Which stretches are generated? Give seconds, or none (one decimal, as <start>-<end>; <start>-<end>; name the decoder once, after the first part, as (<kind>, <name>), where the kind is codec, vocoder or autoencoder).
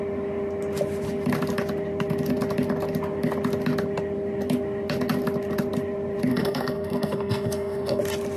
6.3-8.0 (codec, SNAC)